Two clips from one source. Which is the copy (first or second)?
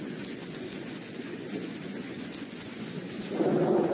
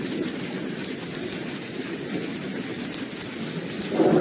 first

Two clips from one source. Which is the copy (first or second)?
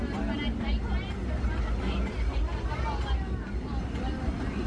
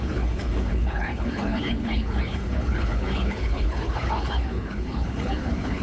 second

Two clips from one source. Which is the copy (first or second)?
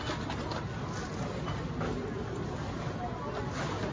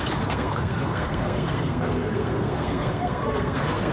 second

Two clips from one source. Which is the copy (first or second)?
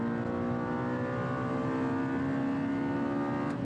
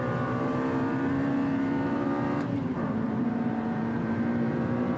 second